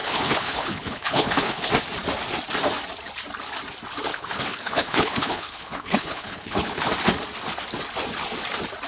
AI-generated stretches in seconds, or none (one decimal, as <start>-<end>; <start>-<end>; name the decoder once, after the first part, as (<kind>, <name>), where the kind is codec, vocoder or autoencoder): 0.0-1.7 (codec, HILCodec); 4.1-6.9